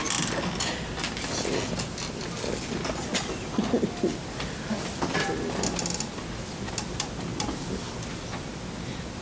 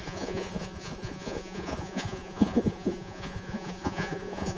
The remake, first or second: second